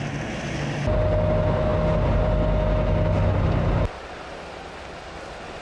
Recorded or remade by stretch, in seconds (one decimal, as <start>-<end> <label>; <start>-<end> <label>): 0.0-5.6 recorded